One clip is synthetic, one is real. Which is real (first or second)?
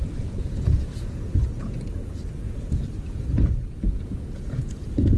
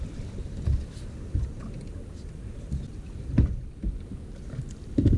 second